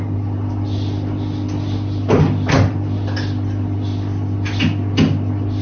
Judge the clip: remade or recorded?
recorded